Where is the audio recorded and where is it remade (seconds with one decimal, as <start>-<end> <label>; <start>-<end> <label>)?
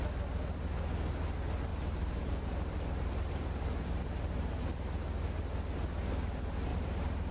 0.0-1.7 recorded; 1.7-4.6 remade; 4.6-6.7 recorded; 6.7-7.3 remade